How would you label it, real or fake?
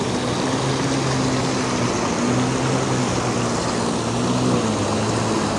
real